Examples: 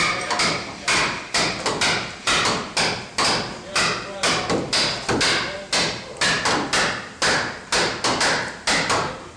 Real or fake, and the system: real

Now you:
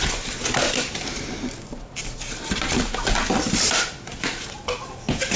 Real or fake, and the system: real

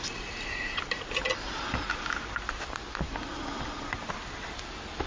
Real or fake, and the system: real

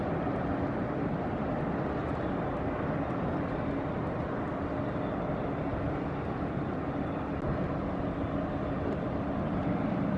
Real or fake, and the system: real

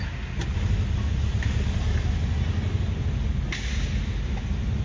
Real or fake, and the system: real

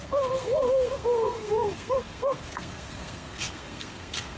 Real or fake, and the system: fake, codec, SNAC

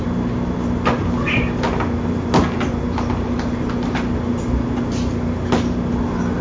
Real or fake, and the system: real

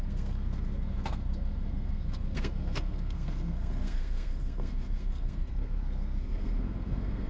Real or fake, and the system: fake, codec, SNAC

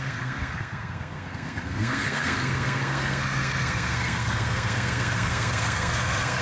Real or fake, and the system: fake, codec, SNAC